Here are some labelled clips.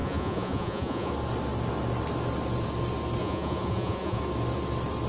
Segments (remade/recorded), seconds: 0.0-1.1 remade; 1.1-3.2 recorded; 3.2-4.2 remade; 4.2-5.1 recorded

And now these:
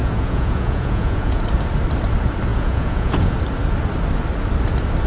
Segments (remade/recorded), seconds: 0.0-1.4 remade; 1.4-2.5 recorded; 2.5-3.4 remade; 3.4-5.1 recorded

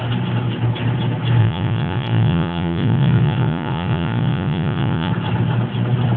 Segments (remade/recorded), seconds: 0.0-1.4 recorded; 1.4-5.1 remade; 5.1-6.2 recorded

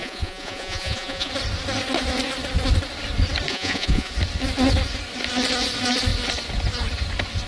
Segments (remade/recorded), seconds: 0.0-1.3 remade; 1.3-3.5 recorded; 3.5-4.1 remade; 4.1-7.5 recorded

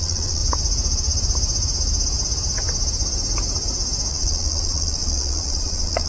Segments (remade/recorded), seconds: 0.0-0.4 remade; 0.4-4.1 recorded; 4.1-6.1 remade

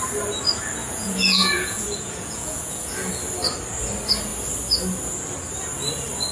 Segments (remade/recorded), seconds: 0.0-0.8 recorded; 0.8-3.1 remade; 3.1-6.3 recorded

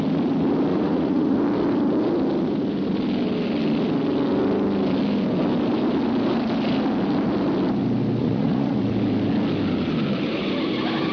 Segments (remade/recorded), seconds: 0.0-0.7 recorded; 0.7-1.4 remade; 1.4-8.2 recorded; 8.2-8.8 remade; 8.8-11.1 recorded

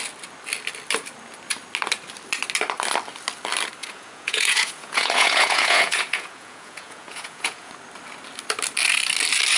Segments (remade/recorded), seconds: 0.0-3.8 recorded; 3.8-7.7 remade; 7.7-9.6 recorded